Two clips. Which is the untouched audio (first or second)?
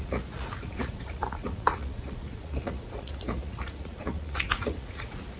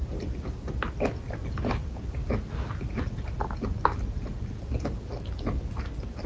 second